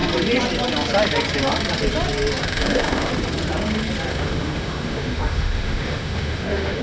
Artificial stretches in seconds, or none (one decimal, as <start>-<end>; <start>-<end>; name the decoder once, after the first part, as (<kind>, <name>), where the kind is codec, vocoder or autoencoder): 2.4-3.1 (autoencoder, DAC-VAE); 4.1-6.8